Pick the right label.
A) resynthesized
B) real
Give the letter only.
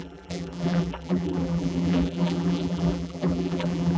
A